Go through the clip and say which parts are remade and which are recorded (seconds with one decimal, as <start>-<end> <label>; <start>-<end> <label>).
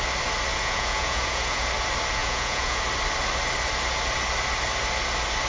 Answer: 0.0-0.5 recorded; 0.5-1.7 remade; 1.7-2.2 recorded; 2.2-2.8 remade; 2.8-5.5 recorded